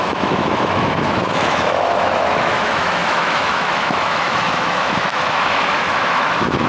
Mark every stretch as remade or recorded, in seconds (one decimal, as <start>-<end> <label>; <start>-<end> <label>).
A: 0.0-6.7 remade